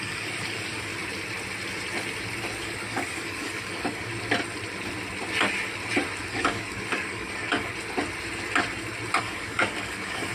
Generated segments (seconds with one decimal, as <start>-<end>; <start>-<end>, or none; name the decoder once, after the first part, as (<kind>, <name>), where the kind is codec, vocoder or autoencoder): 0.0-0.9 (codec, DAC); 2.6-4.1; 6.3-7.7; 9.2-10.3